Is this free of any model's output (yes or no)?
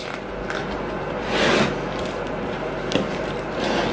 yes